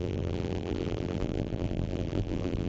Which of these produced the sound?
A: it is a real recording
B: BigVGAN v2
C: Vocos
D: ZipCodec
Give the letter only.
B